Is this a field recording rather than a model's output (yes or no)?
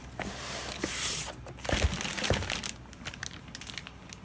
yes